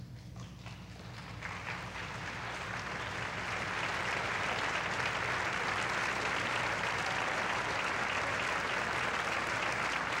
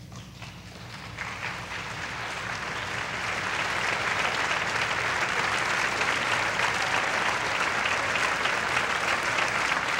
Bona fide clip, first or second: first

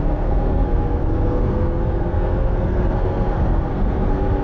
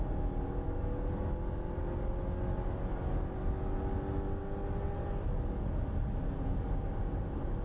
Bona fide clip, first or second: second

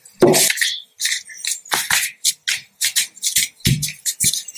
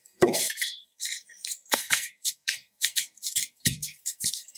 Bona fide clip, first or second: first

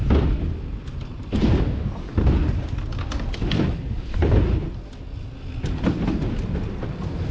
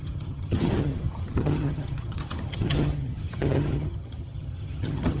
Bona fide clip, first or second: first